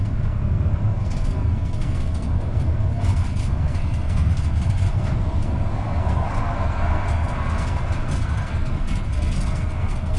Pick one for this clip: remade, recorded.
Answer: remade